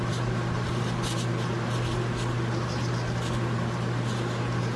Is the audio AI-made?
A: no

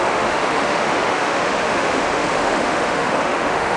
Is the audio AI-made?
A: yes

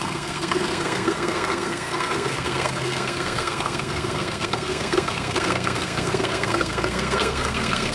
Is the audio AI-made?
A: yes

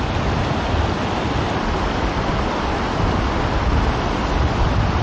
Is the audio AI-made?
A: no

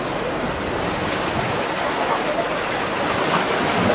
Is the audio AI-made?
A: no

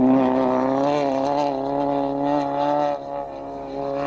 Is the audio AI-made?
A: no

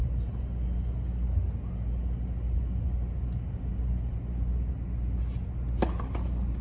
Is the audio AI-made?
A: no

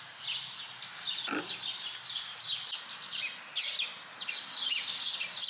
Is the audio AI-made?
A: no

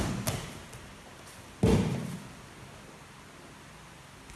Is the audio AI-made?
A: no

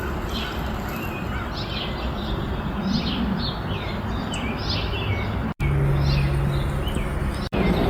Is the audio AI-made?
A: no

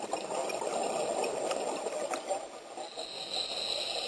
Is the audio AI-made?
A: no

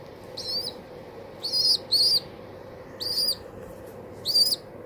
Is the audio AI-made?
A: no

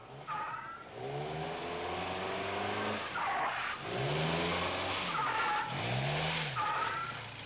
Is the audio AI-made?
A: no